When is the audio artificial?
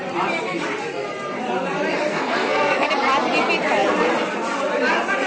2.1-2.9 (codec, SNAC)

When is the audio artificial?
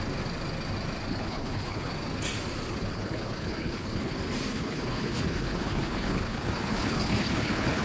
1.1-1.9 (codec, HILCodec); 2.8-4.1; 4.5-7.8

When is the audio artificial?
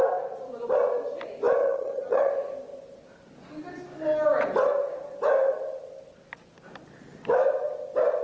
1.6-2.3 (vocoder, HiFi-GAN)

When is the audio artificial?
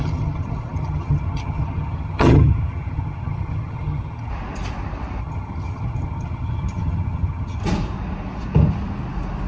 0.0-4.3 (vocoder, HiFi-GAN); 5.2-7.6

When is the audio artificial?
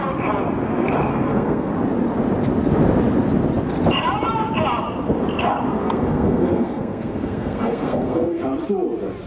1.1-1.7 (codec, SNAC); 5.7-8.4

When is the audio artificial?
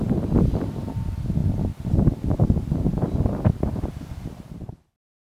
none